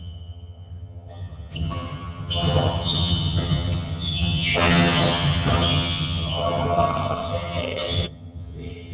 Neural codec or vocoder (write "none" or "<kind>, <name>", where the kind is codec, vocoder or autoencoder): vocoder, HiFi-GAN